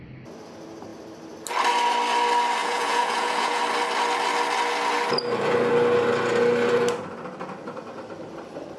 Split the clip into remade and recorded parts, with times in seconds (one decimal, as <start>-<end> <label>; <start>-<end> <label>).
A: 0.0-2.6 recorded; 2.6-3.6 remade; 3.6-8.8 recorded